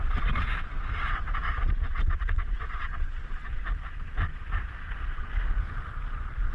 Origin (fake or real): fake